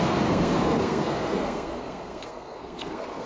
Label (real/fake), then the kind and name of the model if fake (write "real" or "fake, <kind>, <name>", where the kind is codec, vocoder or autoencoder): fake, codec, SNAC